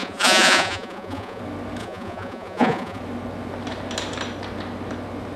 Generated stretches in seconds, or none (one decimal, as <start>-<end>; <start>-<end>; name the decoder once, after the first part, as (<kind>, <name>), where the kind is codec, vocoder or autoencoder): 0.0-1.4 (vocoder, Vocos); 1.8-3.0